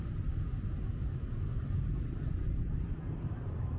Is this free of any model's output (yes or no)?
yes